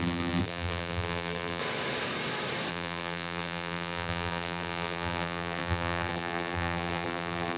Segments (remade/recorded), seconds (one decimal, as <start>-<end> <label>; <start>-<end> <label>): 0.0-1.6 remade; 1.6-2.7 recorded; 2.7-7.6 remade

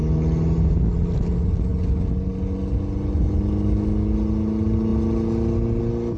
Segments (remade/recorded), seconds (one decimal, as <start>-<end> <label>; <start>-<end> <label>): 0.0-6.2 recorded

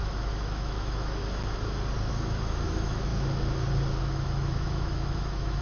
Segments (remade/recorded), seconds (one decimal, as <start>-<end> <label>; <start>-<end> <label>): 0.0-1.2 remade; 1.2-2.1 recorded; 2.1-3.1 remade; 3.1-4.0 recorded; 4.0-5.6 remade

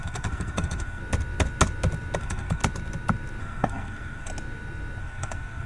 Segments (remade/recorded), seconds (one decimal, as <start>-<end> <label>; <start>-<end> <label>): 0.0-1.0 remade; 1.0-2.2 recorded; 2.2-2.6 remade; 2.6-3.4 recorded; 3.4-4.3 remade; 4.3-5.0 recorded; 5.0-5.7 remade

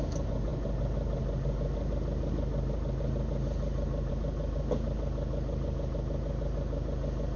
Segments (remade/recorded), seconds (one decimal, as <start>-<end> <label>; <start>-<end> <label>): 0.0-7.4 recorded